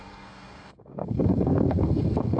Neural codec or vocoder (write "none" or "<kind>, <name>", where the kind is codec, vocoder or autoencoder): codec, SNAC